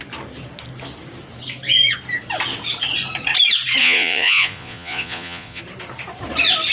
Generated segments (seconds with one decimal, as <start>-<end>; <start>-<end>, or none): 3.8-5.6